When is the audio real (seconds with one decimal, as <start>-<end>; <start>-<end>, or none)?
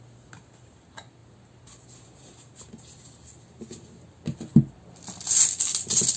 0.0-6.2